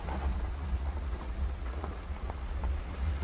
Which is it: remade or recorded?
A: remade